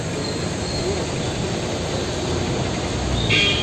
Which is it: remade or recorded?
recorded